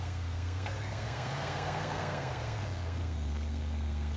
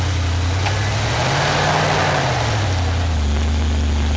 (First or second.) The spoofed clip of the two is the first